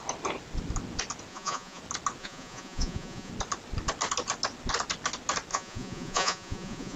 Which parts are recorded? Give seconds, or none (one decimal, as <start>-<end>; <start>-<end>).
0.0-1.3; 1.8-2.2; 3.3-5.5